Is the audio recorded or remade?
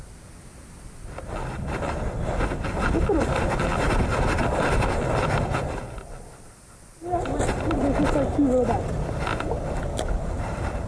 recorded